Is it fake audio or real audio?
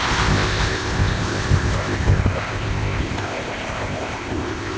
fake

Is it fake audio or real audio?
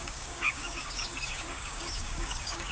fake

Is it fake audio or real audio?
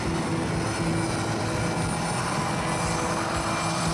real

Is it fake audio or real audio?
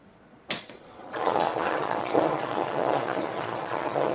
fake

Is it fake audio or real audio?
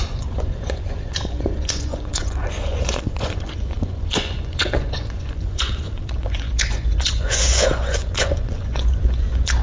fake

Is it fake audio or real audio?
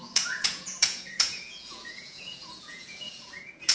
fake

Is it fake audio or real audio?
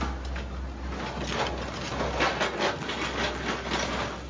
real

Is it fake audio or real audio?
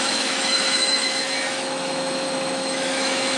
fake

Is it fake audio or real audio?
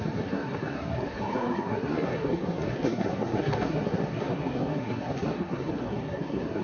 fake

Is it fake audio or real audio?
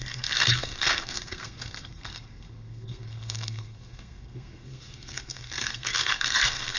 fake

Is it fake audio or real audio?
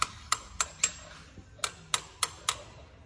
real